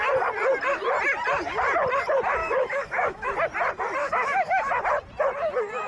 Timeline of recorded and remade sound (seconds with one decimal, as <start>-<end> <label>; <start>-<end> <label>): 0.0-2.4 recorded; 2.4-3.3 remade; 3.3-4.0 recorded; 4.0-4.7 remade; 4.7-5.9 recorded